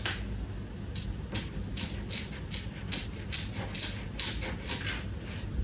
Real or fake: real